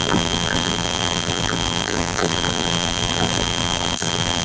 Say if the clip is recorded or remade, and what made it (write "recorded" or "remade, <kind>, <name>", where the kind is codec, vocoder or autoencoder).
remade, vocoder, BigVGAN v2